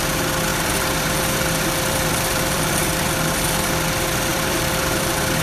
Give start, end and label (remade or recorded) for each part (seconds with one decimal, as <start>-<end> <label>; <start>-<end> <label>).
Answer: 0.0-0.5 recorded; 0.5-3.7 remade; 3.7-4.3 recorded; 4.3-5.4 remade